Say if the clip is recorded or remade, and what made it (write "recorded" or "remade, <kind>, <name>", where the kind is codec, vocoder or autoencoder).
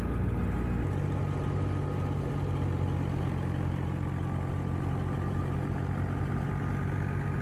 recorded